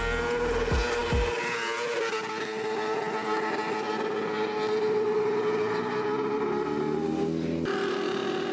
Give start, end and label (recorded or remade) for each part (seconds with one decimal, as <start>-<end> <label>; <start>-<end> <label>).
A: 0.0-8.5 recorded